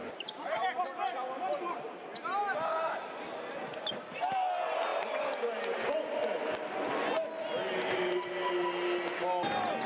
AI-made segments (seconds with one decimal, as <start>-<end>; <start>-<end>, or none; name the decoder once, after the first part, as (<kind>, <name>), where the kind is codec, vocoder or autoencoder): 0.0-0.8 (vocoder, BigVGAN v2)